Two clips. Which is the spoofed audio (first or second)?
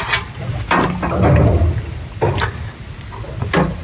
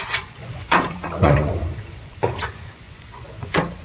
second